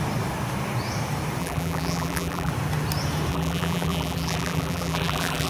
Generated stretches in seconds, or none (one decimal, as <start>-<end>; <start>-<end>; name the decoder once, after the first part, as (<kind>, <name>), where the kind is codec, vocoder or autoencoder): 1.4-2.5 (vocoder, BigVGAN v2); 3.3-5.5